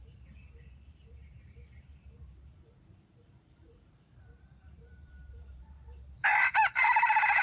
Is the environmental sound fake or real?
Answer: fake